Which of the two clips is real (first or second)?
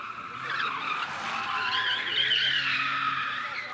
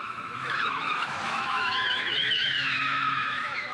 first